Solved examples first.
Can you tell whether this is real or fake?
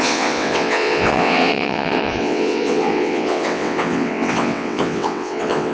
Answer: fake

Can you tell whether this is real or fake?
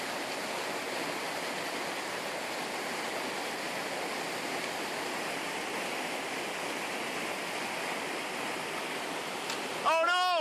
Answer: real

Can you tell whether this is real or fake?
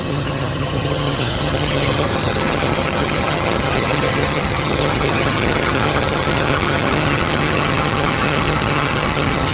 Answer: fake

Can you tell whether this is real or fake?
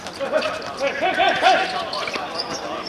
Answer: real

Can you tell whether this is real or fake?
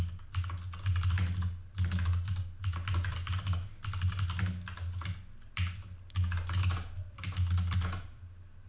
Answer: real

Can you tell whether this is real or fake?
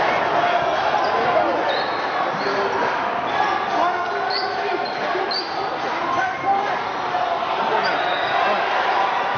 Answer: real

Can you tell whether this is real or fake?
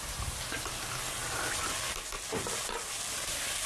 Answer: real